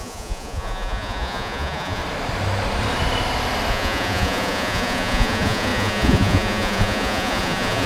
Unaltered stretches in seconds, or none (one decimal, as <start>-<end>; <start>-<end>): 2.0-3.7